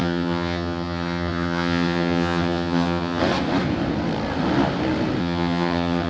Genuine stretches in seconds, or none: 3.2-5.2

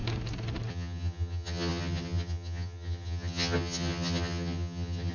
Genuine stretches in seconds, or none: 0.0-0.7

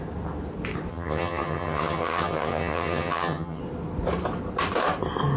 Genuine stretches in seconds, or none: 0.0-0.9; 3.6-5.4

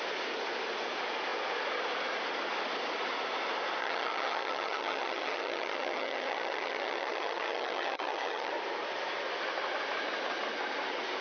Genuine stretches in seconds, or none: 0.0-3.8; 8.5-11.2

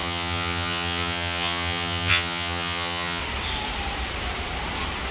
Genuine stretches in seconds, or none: 3.2-5.1